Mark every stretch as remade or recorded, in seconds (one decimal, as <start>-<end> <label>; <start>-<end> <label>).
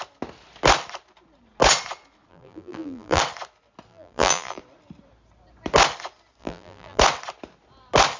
0.0-2.3 recorded; 2.3-3.2 remade; 3.2-3.9 recorded; 3.9-4.6 remade; 4.6-6.4 recorded; 6.4-7.0 remade; 7.0-8.2 recorded